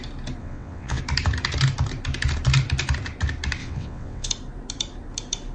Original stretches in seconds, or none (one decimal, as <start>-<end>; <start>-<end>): 0.0-0.4; 1.0-3.6; 4.3-5.5